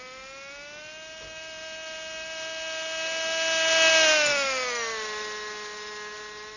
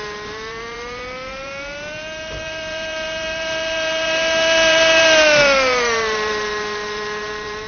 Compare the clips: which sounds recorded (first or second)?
first